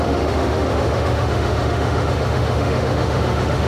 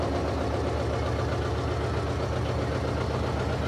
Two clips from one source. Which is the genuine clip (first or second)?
second